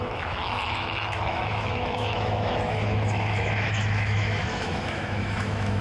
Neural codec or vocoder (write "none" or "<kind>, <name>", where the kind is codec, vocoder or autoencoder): autoencoder, DAC-VAE